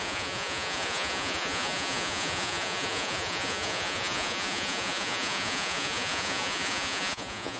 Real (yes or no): no